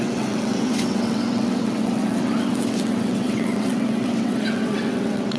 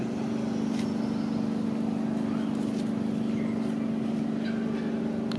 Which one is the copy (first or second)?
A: first